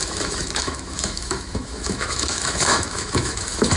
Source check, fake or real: fake